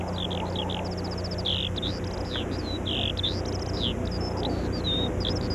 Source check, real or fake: real